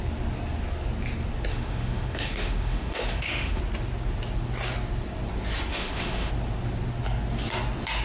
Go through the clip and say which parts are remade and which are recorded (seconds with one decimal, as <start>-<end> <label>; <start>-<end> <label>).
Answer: 0.0-1.5 recorded; 1.5-3.6 remade; 3.6-5.7 recorded; 5.7-6.3 remade; 6.3-8.0 recorded